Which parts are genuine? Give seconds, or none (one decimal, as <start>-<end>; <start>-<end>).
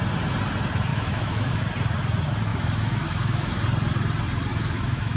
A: 0.0-0.9; 1.6-2.5; 3.6-4.5